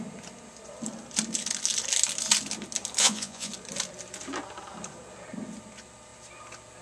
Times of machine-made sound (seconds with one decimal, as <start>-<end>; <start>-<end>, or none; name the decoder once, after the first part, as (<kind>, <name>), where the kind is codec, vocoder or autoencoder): 3.0-3.5 (vocoder, Vocos)